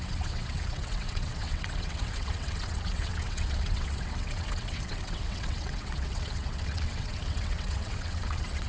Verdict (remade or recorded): remade